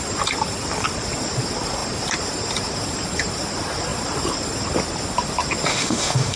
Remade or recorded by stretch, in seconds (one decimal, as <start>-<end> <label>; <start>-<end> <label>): 0.0-5.7 recorded; 5.7-6.4 remade